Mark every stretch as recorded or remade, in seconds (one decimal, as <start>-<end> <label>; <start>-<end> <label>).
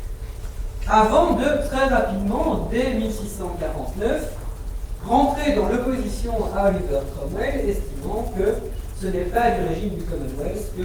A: 0.0-9.2 recorded; 9.2-9.8 remade; 9.8-10.8 recorded